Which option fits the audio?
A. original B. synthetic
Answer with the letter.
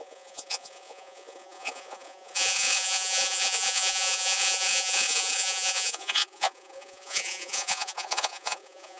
B